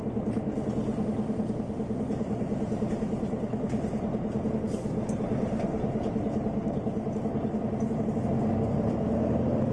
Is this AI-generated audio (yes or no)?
no